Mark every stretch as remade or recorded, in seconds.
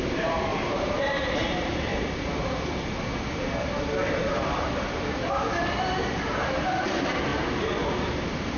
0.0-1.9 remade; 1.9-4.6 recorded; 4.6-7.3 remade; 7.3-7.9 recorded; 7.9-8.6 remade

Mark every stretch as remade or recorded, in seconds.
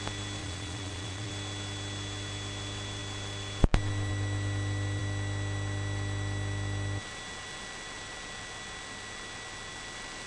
0.0-0.4 recorded; 0.4-1.3 remade; 1.3-10.3 recorded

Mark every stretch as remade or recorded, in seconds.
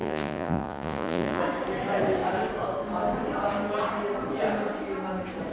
0.0-1.4 remade; 1.4-5.5 recorded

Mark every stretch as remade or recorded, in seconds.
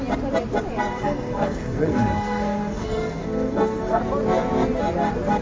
0.0-0.8 recorded; 0.8-4.0 remade; 4.0-5.4 recorded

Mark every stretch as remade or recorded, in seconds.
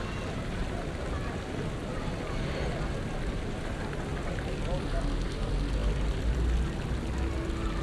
0.0-7.8 recorded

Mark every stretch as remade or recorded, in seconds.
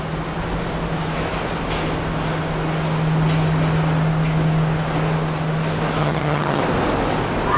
0.0-6.0 recorded; 6.0-6.6 remade; 6.6-7.6 recorded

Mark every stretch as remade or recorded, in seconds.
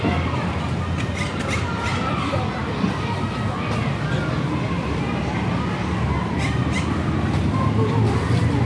0.0-1.9 recorded; 1.9-2.5 remade; 2.5-8.7 recorded